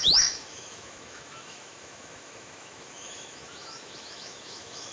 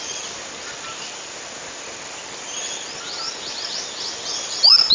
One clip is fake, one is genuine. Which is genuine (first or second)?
second